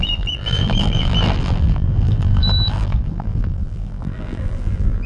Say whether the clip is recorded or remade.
remade